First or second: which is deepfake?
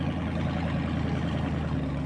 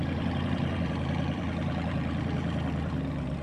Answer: second